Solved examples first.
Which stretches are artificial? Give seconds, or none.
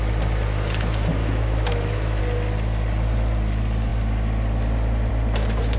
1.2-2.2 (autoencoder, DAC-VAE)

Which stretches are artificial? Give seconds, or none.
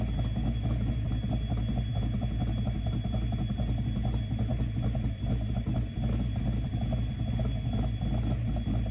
0.4-0.9 (autoencoder, DAC-VAE)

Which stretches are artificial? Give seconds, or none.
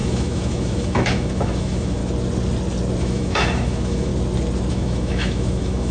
0.0-2.0 (autoencoder, DAC-VAE); 3.0-4.1; 4.7-5.9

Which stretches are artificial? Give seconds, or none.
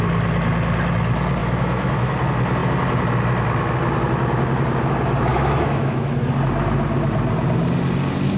1.4-2.1 (autoencoder, DAC-VAE); 5.3-6.3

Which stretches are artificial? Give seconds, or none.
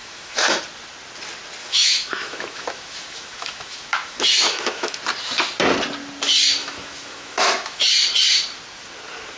0.0-0.6 (autoencoder, DAC-VAE); 1.6-5.0; 6.6-7.8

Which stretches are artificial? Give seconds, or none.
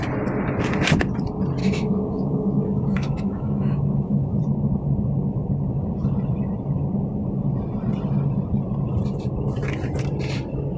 1.6-4.4 (autoencoder, DAC-VAE)